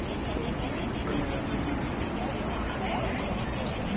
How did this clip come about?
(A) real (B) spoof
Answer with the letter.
A